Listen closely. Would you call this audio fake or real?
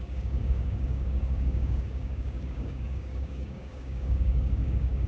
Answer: fake